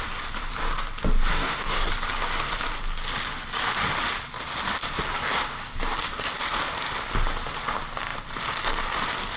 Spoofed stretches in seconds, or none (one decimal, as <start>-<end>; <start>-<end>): 1.3-1.9